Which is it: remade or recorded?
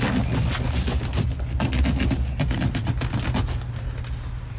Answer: recorded